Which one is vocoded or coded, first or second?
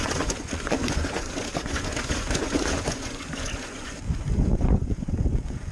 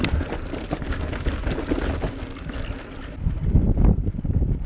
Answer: first